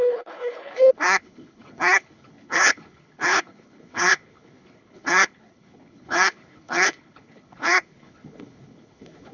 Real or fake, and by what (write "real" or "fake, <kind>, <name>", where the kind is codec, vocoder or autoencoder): fake, codec, HILCodec